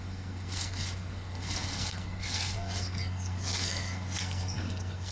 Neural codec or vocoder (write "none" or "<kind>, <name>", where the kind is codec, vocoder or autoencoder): codec, SNAC